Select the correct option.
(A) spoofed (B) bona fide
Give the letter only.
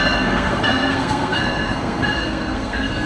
A